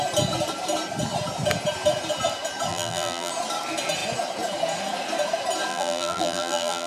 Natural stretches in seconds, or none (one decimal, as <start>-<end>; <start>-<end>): 0.0-2.7; 3.3-5.7